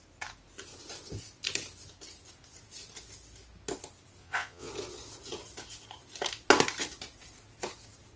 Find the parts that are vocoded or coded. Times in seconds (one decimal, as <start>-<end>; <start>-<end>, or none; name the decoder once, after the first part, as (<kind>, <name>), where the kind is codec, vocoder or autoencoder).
4.2-4.7 (vocoder, Vocos)